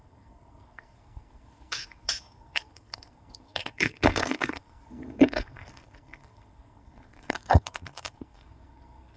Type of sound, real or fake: fake